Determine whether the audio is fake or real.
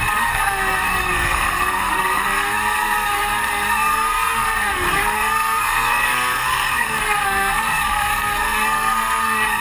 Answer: fake